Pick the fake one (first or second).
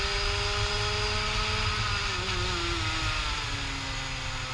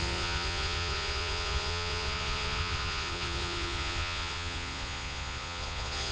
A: second